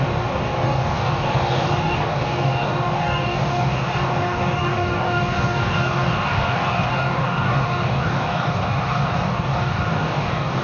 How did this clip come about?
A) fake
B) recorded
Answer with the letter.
A